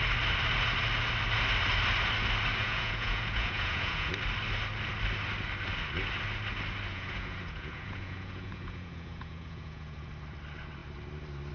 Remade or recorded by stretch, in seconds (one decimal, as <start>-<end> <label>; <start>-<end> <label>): 0.0-2.6 recorded; 2.6-4.1 remade; 4.1-6.9 recorded; 6.9-10.1 remade; 10.1-11.5 recorded